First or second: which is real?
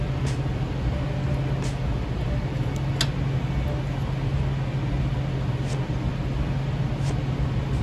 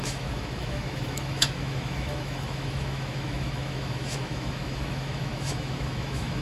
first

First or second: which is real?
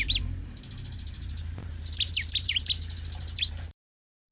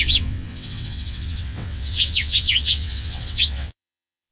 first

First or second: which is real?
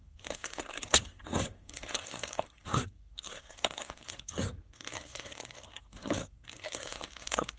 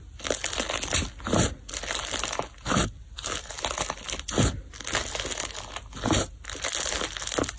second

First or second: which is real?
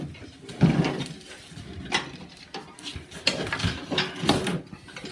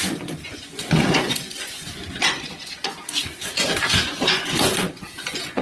first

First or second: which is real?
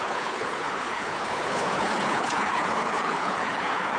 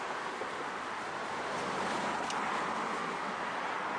second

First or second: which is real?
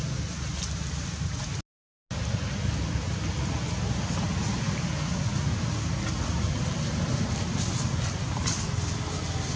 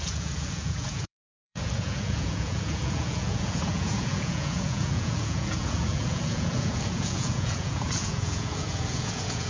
first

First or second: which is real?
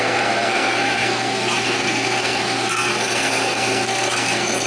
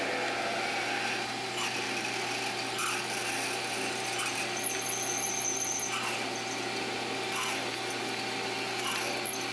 second